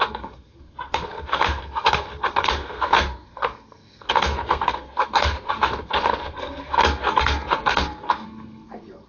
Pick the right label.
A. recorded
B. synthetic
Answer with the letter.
B